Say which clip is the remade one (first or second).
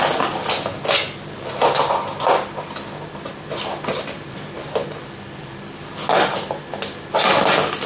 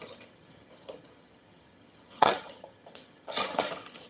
second